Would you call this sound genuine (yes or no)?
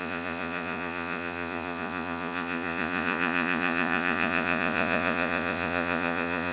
no